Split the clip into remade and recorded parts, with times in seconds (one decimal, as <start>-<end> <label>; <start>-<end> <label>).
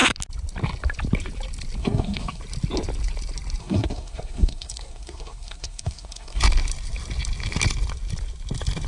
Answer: 0.0-1.8 recorded; 1.8-2.4 remade; 2.4-3.6 recorded; 3.6-6.4 remade; 6.4-8.9 recorded